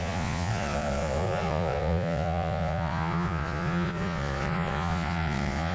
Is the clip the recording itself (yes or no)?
no